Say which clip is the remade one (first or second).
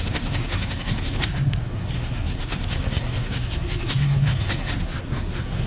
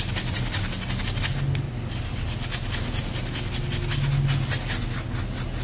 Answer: first